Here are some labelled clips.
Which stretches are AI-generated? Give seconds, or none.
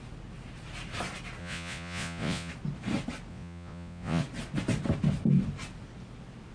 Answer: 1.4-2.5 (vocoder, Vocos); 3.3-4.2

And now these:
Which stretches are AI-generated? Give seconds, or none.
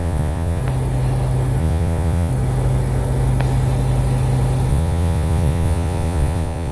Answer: 0.0-0.6 (vocoder, Vocos); 1.6-2.3; 4.7-6.7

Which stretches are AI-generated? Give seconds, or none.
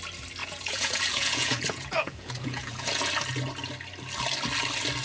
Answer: 0.4-3.1 (vocoder, Vocos)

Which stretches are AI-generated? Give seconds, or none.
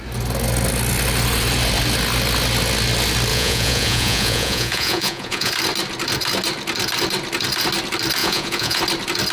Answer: 3.3-5.5 (vocoder, Vocos); 8.2-8.8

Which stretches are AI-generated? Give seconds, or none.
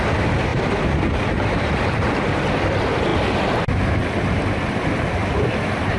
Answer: none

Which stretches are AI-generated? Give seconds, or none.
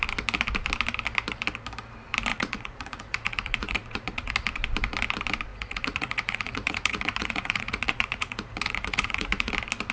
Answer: 2.3-4.3 (vocoder, Vocos); 5.5-9.5